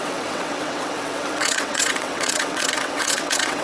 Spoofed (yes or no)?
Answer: yes